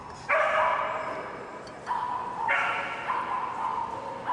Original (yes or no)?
yes